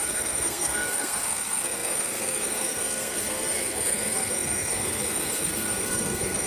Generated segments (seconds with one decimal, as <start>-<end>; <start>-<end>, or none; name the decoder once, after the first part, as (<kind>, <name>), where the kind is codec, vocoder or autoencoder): 0.0-6.5 (codec, SNAC)